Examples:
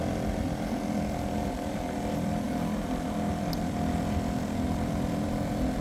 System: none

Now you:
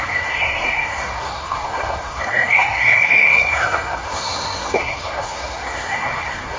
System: codec, SNAC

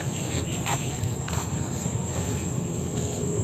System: codec, SNAC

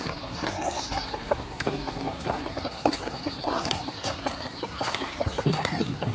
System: codec, SNAC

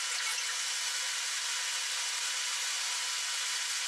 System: none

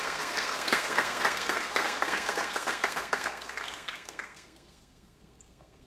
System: codec, SNAC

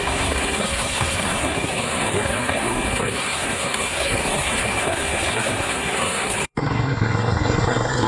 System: codec, SNAC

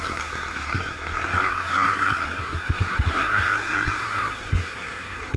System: codec, SNAC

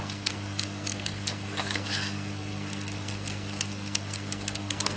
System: codec, SNAC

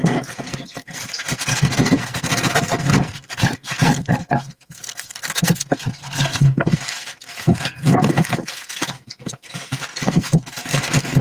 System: codec, SNAC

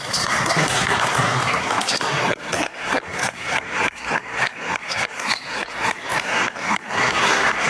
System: codec, SNAC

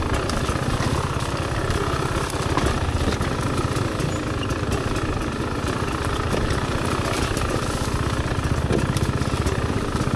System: none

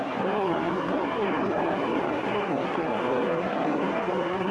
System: codec, SNAC